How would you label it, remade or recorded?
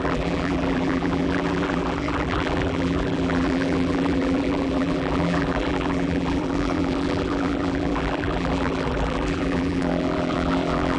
remade